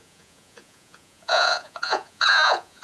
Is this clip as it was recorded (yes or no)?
no